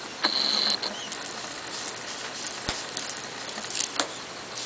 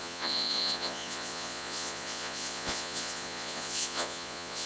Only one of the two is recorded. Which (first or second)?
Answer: first